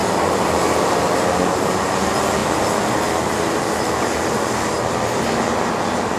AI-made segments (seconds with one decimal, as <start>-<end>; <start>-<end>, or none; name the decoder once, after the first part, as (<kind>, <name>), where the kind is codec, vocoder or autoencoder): none